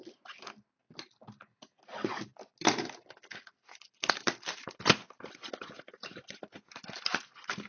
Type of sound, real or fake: real